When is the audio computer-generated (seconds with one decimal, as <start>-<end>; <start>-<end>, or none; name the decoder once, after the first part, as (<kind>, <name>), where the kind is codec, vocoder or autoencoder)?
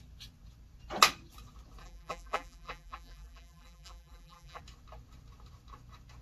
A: 1.8-4.6 (vocoder, BigVGAN v2)